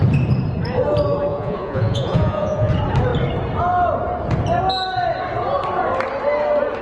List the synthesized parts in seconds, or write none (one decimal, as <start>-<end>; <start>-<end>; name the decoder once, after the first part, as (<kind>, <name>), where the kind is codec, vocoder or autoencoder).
1.3-2.7 (vocoder, Vocos)